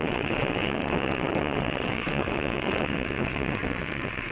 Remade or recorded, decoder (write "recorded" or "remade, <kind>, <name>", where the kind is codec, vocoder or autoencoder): remade, vocoder, WaveNeXt